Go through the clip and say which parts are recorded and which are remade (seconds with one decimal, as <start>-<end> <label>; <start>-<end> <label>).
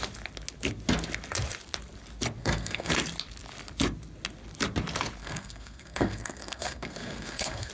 0.0-2.4 recorded; 2.4-2.9 remade; 2.9-5.2 recorded; 5.2-7.7 remade